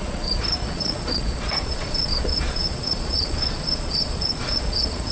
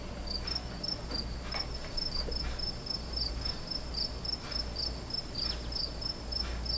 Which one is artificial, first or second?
first